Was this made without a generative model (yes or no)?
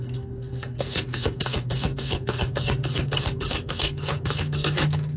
no